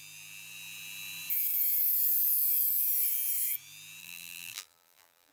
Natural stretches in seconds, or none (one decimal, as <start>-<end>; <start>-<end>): 0.0-4.0